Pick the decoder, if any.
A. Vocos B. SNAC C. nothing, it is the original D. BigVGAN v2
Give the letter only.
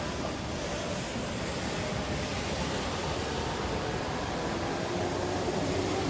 C